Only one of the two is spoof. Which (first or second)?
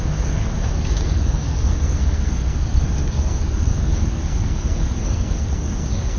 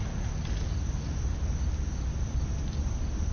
first